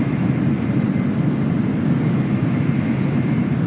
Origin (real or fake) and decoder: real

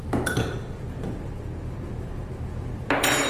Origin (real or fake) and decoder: fake, vocoder, BigVGAN v2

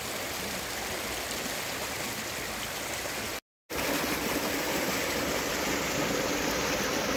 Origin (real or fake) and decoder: real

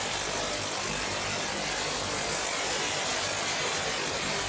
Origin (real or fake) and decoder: real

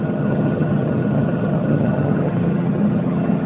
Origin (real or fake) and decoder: fake, vocoder, HiFi-GAN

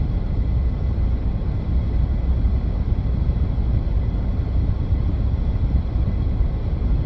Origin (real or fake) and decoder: fake, vocoder, BigVGAN v2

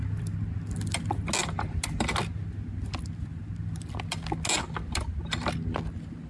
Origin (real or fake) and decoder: real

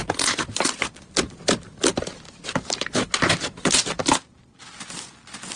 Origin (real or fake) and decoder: fake, vocoder, BigVGAN v2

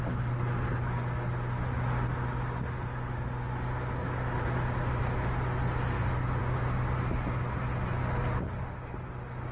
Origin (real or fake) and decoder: real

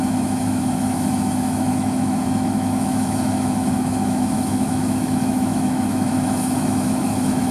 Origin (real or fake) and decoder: fake, autoencoder, DAC-VAE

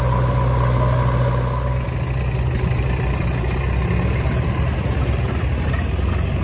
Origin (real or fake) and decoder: real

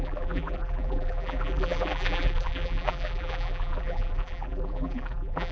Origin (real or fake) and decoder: fake, vocoder, BigVGAN v2